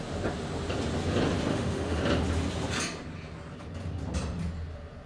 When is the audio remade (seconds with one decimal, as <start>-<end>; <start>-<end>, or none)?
1.5-2.0